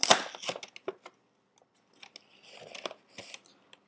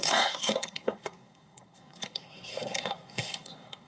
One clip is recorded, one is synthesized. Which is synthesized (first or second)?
second